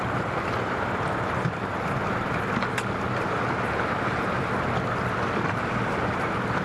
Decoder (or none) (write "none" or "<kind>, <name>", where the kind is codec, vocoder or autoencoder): none